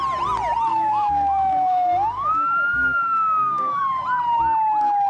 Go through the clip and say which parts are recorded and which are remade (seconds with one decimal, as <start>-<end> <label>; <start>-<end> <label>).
0.0-0.7 recorded; 0.7-3.8 remade; 3.8-5.1 recorded